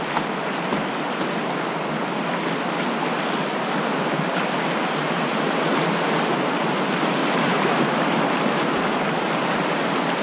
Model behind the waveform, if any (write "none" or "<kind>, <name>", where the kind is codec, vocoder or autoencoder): none